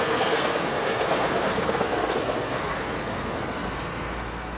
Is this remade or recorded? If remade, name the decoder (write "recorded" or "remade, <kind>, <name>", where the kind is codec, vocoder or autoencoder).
remade, codec, SNAC